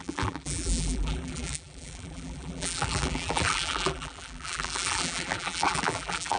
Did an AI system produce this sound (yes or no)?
yes